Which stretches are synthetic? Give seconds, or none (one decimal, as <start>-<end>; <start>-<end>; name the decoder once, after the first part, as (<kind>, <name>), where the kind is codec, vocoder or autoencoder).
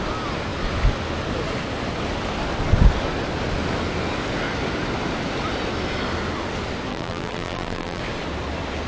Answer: 6.9-8.0 (vocoder, BigVGAN v2)